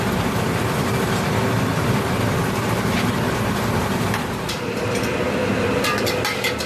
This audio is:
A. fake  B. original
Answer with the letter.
A